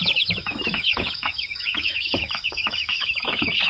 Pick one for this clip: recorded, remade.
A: remade